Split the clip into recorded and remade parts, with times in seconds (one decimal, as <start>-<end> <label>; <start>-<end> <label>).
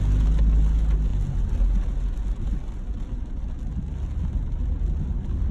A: 0.0-5.5 recorded